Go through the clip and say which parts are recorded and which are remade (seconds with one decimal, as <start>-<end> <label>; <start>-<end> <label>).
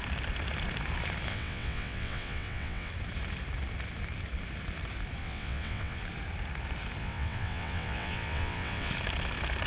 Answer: 0.0-1.3 recorded; 1.3-2.9 remade; 2.9-5.2 recorded; 5.2-6.0 remade; 6.0-7.0 recorded; 7.0-8.9 remade; 8.9-9.7 recorded